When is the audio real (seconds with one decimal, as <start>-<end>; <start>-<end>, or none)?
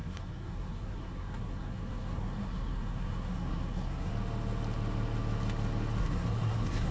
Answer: 4.1-6.0